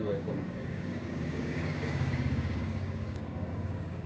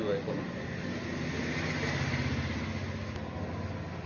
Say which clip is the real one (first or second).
second